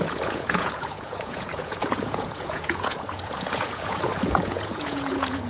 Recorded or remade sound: remade